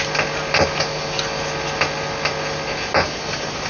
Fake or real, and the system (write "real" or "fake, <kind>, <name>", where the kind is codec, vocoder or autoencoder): real